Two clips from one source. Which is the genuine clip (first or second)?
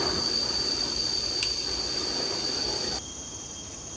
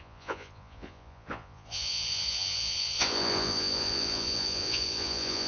first